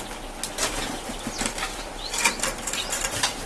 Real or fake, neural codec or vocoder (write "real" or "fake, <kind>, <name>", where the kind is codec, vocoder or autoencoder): real